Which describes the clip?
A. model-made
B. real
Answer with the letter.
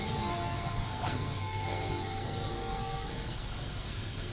A